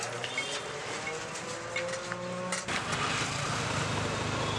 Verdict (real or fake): real